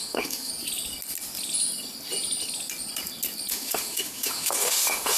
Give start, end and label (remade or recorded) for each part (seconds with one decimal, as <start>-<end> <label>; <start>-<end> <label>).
0.0-0.5 remade; 0.5-3.5 recorded; 3.5-5.2 remade